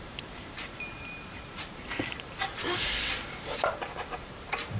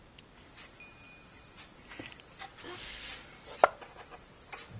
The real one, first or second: second